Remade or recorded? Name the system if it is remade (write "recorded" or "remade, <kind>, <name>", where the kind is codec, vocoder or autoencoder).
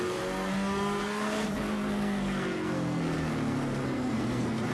remade, codec, SNAC